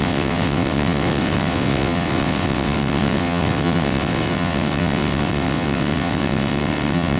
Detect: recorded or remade remade